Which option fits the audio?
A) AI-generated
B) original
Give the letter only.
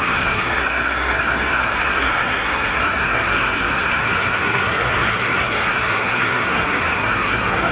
A